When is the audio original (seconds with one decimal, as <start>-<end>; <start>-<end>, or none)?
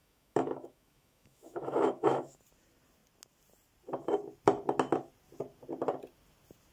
2.4-6.7